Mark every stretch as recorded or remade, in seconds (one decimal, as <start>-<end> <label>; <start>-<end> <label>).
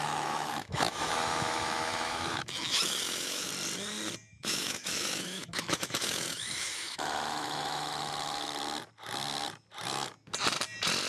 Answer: 0.0-3.5 remade; 3.5-4.3 recorded; 4.3-8.6 remade; 8.6-11.1 recorded